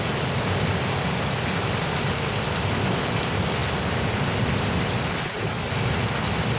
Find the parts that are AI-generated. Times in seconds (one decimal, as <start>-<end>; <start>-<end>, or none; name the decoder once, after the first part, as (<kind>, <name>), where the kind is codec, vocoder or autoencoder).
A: none